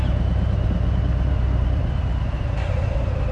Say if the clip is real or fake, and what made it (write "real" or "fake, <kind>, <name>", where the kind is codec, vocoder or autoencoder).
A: real